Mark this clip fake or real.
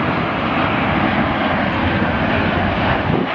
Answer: real